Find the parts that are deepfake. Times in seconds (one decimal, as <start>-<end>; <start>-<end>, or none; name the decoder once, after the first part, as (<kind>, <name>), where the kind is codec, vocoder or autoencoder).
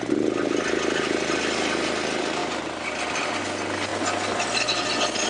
none